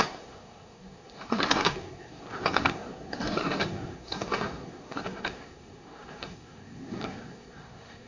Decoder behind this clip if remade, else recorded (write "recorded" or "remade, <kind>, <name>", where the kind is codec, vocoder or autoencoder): remade, codec, SNAC